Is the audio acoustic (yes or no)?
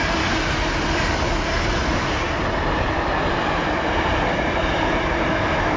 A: yes